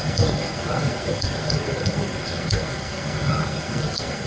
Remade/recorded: remade